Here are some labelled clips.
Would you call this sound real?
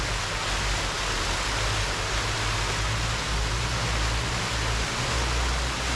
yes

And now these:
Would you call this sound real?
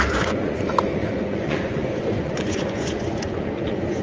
no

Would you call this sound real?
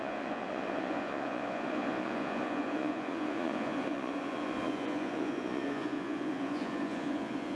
no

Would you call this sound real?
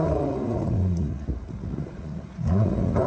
no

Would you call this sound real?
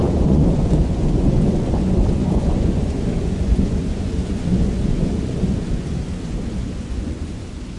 no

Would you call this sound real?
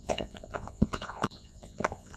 no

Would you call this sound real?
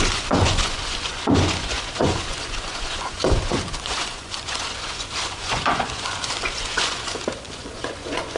no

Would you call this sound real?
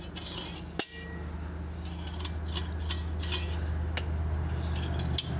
yes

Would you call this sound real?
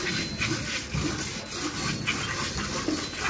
yes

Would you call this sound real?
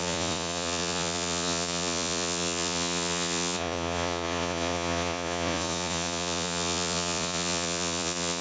no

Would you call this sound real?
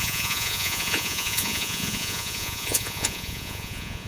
no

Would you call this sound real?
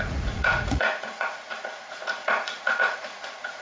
no